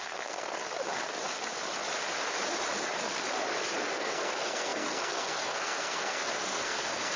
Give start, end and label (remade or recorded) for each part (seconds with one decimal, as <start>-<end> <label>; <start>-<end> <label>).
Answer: 0.0-0.6 remade; 0.6-3.9 recorded; 3.9-7.2 remade